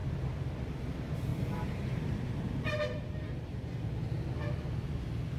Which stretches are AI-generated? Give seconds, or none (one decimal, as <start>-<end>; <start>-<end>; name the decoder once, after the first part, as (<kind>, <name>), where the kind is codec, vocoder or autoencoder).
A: 1.3-4.2 (vocoder, BigVGAN v2)